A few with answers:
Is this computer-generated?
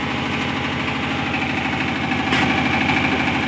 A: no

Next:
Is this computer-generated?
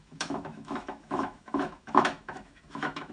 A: yes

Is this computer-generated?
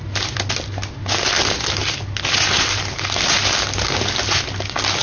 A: no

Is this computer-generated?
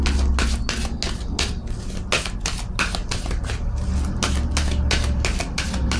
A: no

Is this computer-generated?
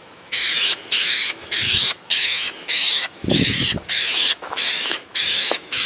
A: yes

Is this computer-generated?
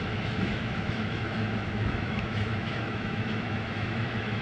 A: yes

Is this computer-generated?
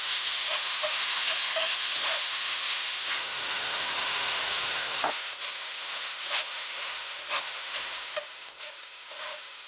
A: yes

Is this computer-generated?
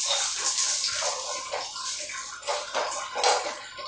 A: no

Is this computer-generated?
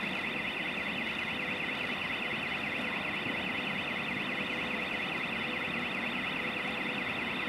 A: no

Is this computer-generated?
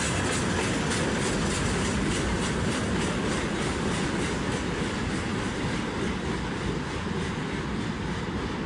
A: no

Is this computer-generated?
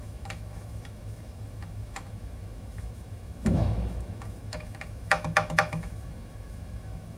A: yes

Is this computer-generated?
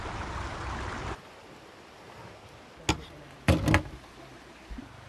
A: no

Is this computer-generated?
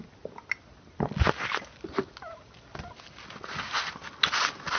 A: no